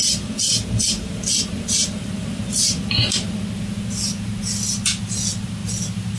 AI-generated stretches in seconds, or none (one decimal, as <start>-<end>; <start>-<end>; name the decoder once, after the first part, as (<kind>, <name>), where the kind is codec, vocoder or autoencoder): none